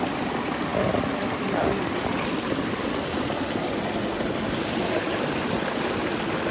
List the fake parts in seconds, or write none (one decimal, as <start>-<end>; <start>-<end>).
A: none